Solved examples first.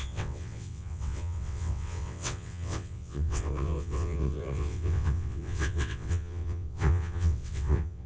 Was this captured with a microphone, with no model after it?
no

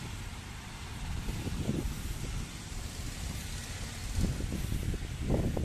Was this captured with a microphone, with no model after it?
yes